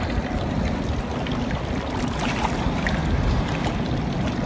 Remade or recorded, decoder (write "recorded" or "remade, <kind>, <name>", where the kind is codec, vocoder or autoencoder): recorded